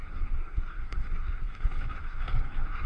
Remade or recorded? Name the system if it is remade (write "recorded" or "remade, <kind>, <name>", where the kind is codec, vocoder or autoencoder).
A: remade, codec, SNAC